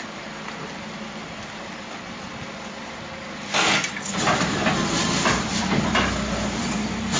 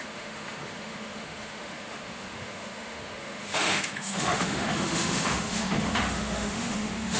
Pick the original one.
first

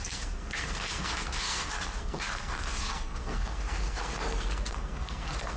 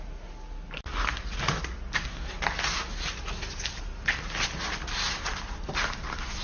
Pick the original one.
second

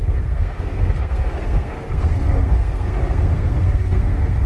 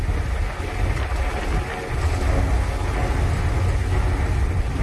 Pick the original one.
second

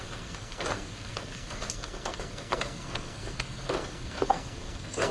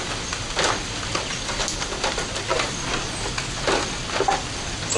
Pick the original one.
second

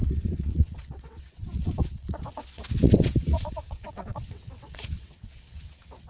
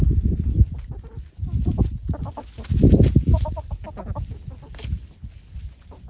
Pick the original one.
second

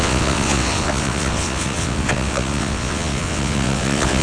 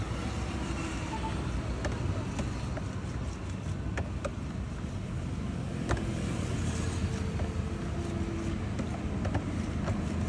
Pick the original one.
second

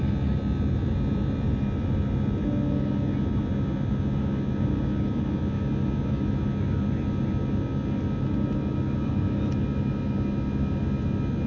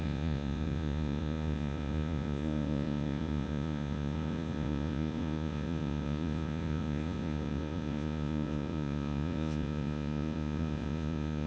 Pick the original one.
first